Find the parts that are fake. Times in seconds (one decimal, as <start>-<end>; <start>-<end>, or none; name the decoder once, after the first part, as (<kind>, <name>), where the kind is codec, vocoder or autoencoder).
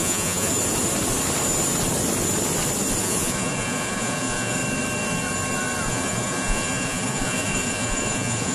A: 0.0-0.5 (vocoder, Vocos); 3.0-4.6; 5.9-8.5